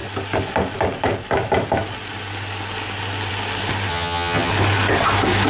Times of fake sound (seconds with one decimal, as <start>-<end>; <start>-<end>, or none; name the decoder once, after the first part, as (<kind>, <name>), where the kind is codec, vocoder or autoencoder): 3.9-4.5 (vocoder, HiFi-GAN)